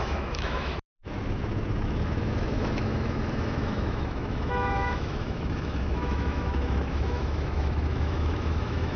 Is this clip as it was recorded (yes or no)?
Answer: no